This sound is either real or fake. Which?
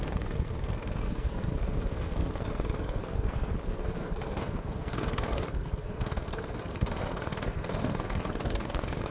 fake